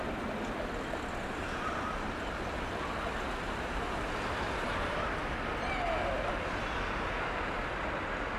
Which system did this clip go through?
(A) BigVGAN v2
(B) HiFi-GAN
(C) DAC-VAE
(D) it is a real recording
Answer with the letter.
D